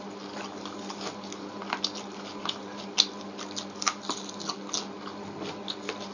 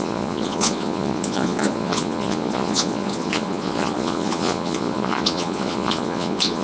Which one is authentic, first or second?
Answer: first